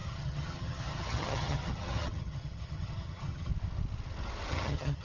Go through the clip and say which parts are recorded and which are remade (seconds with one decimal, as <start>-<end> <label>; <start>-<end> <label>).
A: 0.0-3.5 remade; 3.5-4.5 recorded; 4.5-5.0 remade